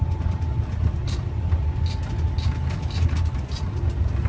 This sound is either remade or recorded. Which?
recorded